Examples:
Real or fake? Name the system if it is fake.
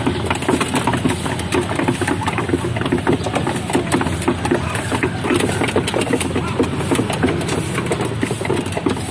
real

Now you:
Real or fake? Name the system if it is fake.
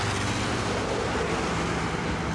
real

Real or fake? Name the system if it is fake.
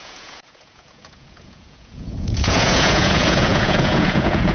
fake, vocoder, Vocos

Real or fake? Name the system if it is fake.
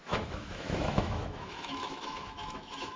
fake, autoencoder, DAC-VAE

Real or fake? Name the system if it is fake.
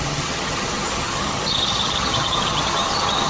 fake, vocoder, HiFi-GAN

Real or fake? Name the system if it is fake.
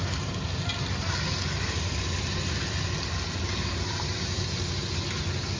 real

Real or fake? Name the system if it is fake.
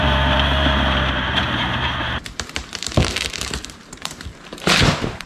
fake, vocoder, BigVGAN v2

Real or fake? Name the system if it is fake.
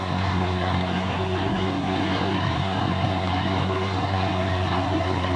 fake, codec, SNAC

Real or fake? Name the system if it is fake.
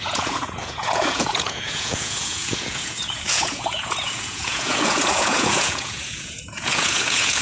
fake, vocoder, Vocos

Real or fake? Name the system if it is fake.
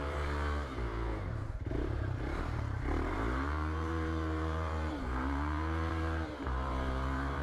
fake, vocoder, BigVGAN v2